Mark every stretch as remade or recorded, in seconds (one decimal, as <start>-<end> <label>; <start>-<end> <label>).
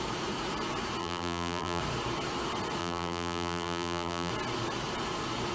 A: 0.0-1.0 recorded; 1.0-1.8 remade; 1.8-2.8 recorded; 2.8-4.3 remade; 4.3-5.5 recorded